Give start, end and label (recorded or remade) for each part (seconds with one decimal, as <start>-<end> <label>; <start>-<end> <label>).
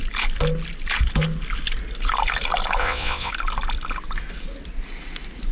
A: 0.0-2.8 recorded; 2.8-3.3 remade; 3.3-5.5 recorded